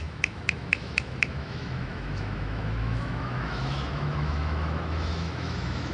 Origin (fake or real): fake